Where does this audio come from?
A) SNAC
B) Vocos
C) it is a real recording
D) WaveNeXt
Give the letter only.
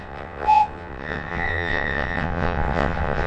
D